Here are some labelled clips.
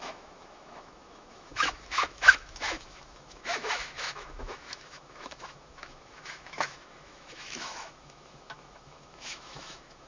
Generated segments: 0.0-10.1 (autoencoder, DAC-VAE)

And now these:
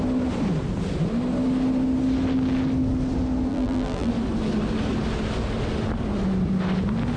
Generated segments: 3.5-4.1 (vocoder, BigVGAN v2)